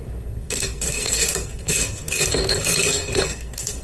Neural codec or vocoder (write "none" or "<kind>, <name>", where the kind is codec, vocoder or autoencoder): codec, SNAC